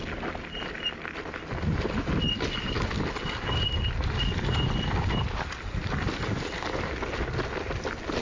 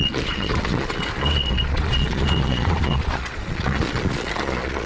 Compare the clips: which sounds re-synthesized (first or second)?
second